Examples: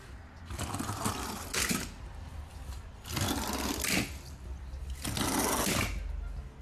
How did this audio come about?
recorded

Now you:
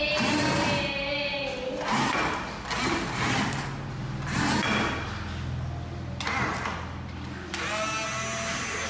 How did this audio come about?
recorded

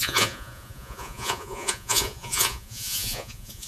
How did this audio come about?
remade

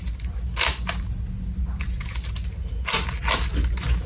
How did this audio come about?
recorded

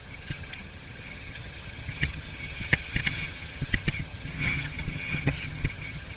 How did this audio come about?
remade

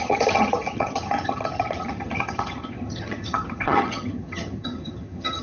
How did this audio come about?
remade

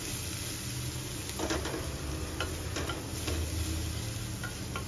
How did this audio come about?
recorded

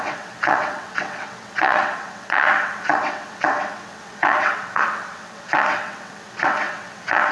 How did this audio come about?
remade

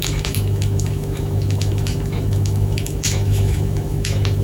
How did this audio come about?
remade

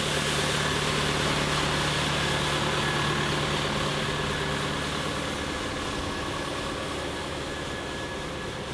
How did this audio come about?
recorded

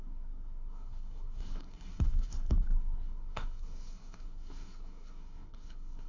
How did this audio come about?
remade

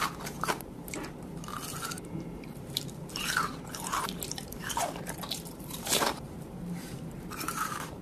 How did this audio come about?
remade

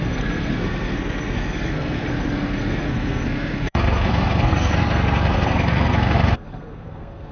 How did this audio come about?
remade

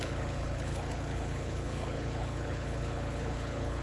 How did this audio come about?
remade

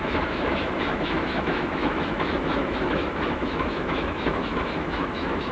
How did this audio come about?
remade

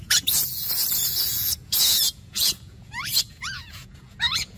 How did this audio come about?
remade